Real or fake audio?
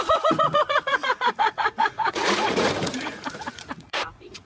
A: fake